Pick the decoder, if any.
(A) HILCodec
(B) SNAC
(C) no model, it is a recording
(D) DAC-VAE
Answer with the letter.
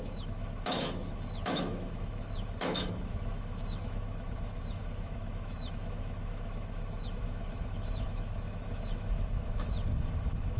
D